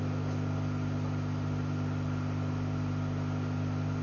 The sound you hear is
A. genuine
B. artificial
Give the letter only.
A